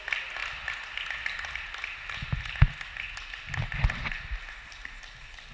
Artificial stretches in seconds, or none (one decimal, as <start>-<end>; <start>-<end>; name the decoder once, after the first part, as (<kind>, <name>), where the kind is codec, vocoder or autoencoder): none